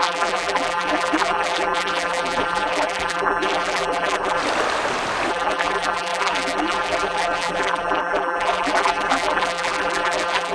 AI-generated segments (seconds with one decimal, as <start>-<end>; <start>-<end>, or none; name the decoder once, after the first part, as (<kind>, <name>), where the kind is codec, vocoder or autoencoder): 0.0-4.4 (vocoder, BigVGAN v2); 5.3-10.5